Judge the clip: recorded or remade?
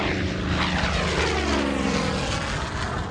recorded